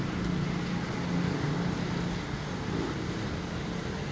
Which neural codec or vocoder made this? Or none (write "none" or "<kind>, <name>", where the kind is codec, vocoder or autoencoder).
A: none